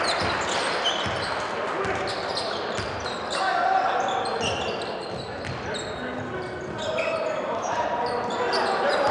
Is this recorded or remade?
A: recorded